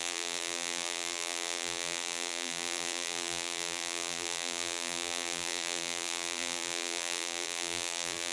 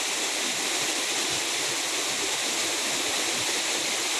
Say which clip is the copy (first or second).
first